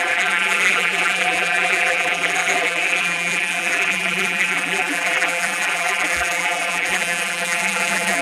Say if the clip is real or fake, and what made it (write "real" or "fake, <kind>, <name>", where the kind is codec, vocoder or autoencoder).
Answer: fake, vocoder, BigVGAN v2